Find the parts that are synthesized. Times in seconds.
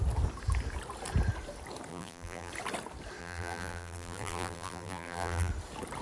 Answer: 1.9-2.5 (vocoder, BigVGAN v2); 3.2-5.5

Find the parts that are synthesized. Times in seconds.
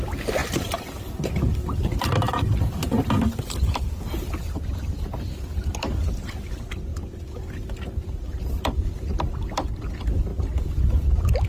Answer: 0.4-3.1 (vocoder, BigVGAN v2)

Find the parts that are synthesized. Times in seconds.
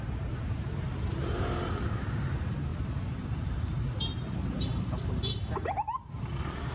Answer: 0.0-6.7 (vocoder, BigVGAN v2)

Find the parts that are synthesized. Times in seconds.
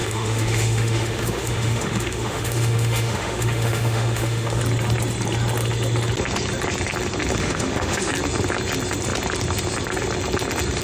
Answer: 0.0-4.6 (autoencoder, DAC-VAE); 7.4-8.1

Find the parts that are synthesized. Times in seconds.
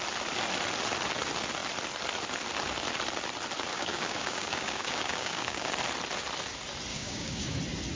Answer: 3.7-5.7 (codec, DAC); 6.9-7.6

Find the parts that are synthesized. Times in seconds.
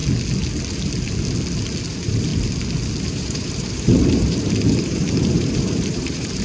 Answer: 1.9-2.3 (vocoder, BigVGAN v2); 3.0-6.4